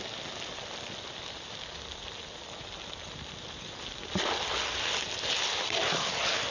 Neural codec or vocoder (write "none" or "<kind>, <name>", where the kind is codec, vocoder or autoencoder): none